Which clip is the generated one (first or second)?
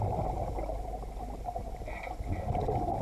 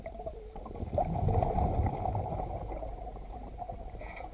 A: second